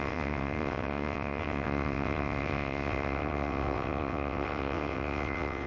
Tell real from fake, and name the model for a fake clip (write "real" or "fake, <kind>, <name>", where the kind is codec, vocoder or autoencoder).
fake, vocoder, WaveNeXt